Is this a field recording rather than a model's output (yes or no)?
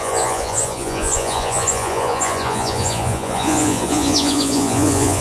no